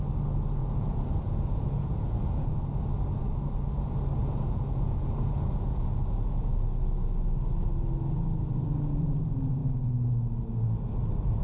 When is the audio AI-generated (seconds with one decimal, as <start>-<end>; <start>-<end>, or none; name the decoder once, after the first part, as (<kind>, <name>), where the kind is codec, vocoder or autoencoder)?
0.6-2.6 (vocoder, Vocos); 4.2-6.5